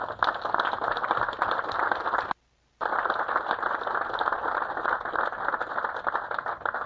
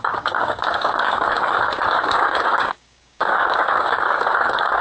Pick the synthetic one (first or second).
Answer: second